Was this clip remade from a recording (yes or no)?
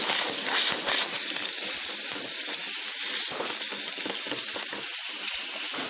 no